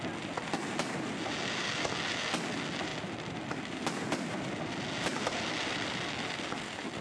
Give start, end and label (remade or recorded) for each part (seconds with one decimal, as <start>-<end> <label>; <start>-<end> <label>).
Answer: 0.0-7.0 recorded